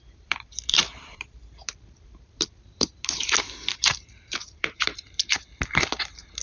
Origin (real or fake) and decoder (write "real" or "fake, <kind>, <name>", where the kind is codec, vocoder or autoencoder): fake, vocoder, BigVGAN v2